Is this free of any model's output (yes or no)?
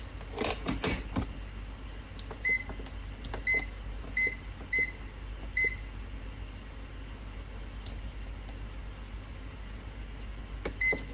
yes